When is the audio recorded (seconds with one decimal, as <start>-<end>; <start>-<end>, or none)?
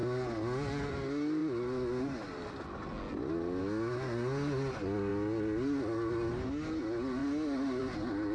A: 0.0-8.3